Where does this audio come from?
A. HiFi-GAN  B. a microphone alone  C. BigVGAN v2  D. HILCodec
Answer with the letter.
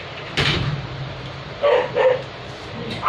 C